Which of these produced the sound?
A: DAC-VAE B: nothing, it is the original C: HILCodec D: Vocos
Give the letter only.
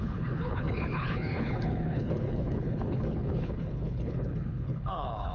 C